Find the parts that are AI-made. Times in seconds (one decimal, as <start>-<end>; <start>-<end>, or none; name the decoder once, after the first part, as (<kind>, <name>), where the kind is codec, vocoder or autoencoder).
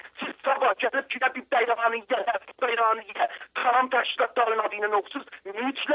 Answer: none